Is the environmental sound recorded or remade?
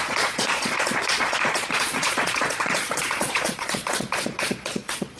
remade